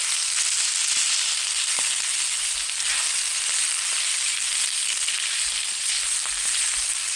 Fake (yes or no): no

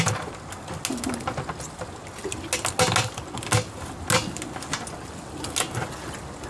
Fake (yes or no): no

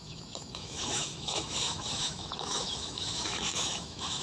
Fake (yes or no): yes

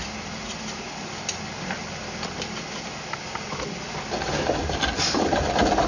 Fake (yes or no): no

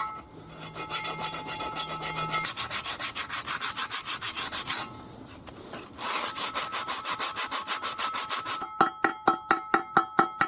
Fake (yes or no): no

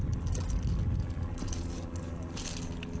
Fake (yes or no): no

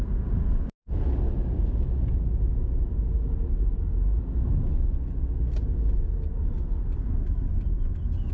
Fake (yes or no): no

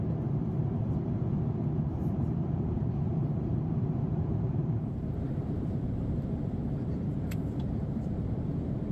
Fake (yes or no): yes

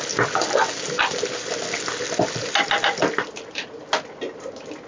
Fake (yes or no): no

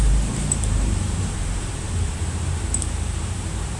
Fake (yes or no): yes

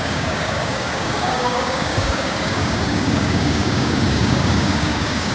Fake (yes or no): yes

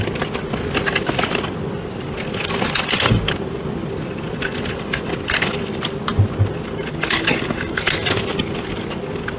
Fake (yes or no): no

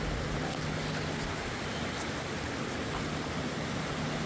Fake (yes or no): no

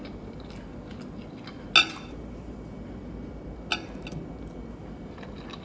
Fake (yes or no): no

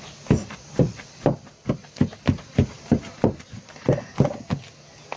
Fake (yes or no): no